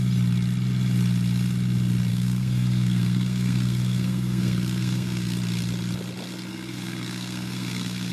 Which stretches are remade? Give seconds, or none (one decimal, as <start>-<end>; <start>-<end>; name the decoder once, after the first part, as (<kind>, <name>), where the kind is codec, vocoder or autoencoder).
2.1-5.4 (codec, SNAC); 6.5-8.1